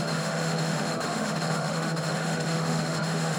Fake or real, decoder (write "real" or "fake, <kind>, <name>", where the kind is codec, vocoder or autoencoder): fake, autoencoder, DAC-VAE